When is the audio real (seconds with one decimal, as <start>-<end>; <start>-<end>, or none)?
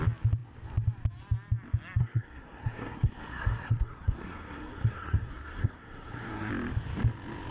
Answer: 0.0-2.0; 6.5-7.5